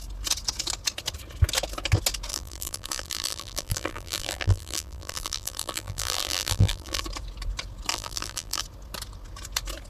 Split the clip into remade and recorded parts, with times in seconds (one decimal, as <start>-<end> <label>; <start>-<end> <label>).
0.0-2.3 recorded; 2.3-7.0 remade; 7.0-7.9 recorded; 7.9-8.6 remade; 8.6-9.9 recorded